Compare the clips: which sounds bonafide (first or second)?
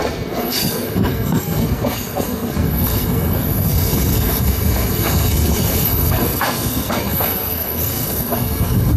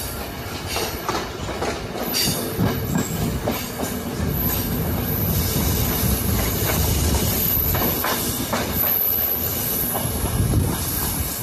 second